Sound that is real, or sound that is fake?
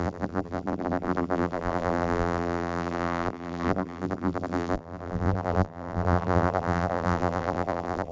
fake